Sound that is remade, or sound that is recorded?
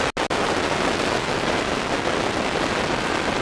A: recorded